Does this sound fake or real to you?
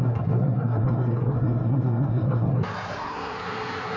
fake